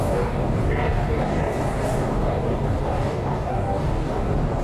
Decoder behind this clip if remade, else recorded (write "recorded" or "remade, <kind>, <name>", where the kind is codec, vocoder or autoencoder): remade, codec, DAC